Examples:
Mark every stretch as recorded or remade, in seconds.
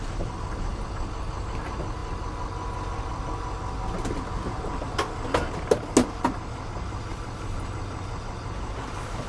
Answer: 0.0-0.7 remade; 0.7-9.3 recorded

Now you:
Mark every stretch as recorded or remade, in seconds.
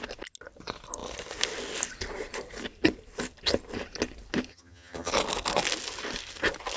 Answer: 0.0-4.5 recorded; 4.5-5.1 remade; 5.1-6.8 recorded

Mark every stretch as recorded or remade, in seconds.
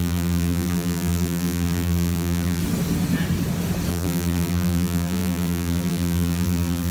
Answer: 0.0-2.6 remade; 2.6-3.9 recorded; 3.9-6.9 remade